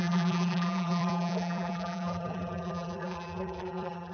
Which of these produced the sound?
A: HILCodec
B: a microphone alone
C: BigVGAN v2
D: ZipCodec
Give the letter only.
C